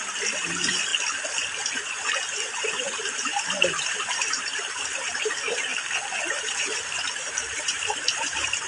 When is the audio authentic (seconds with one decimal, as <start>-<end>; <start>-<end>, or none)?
0.9-1.7; 5.7-6.4